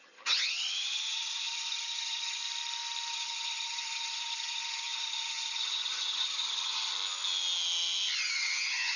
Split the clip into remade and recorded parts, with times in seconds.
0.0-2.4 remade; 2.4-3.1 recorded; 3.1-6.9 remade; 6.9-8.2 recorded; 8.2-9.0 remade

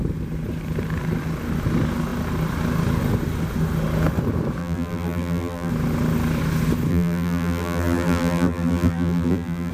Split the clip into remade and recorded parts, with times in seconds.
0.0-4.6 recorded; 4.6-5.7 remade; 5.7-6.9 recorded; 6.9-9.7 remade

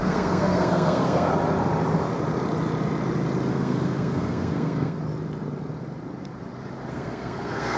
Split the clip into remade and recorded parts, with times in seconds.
0.0-1.3 remade; 1.3-3.5 recorded; 3.5-5.0 remade; 5.0-6.9 recorded; 6.9-7.8 remade

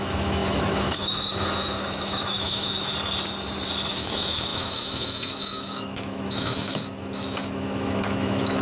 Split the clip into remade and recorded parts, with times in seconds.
0.0-2.9 remade; 2.9-3.9 recorded; 3.9-8.6 remade

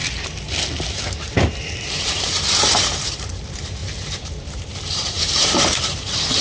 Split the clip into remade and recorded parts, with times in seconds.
0.0-0.9 recorded; 0.9-6.4 remade

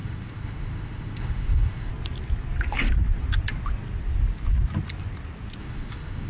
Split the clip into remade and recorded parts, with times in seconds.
0.0-1.9 remade; 1.9-5.6 recorded; 5.6-6.3 remade

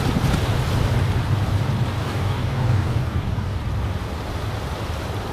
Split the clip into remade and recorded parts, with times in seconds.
0.0-2.0 recorded; 2.0-3.6 remade; 3.6-5.3 recorded

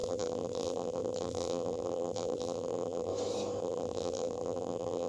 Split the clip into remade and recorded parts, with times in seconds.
0.0-3.1 remade; 3.1-3.6 recorded; 3.6-5.1 remade